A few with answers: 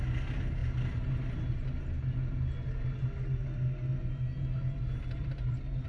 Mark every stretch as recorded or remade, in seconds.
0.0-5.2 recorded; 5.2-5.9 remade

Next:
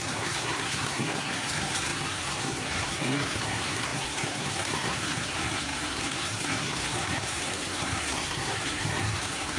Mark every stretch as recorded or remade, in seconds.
0.0-9.6 remade